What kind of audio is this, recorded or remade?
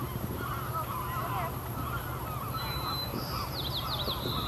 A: remade